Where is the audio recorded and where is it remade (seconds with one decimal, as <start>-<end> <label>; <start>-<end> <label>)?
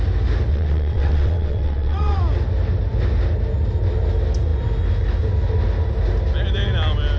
0.0-0.5 recorded; 0.5-2.2 remade; 2.2-7.2 recorded